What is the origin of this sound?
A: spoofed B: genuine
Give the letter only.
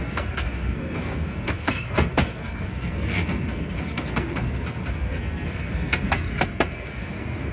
A